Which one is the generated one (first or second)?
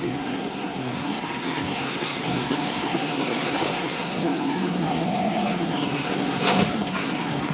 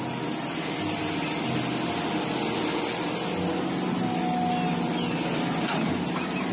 first